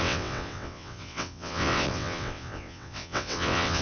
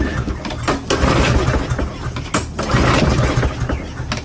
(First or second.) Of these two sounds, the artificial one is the first